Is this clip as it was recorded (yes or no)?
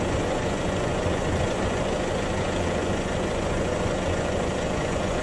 no